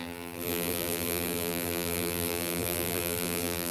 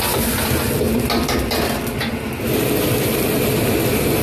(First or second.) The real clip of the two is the second